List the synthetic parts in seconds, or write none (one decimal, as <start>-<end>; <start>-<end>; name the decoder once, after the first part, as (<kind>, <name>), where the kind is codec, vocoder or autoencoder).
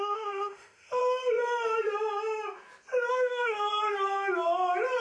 0.0-1.0 (autoencoder, DAC-VAE); 3.1-3.7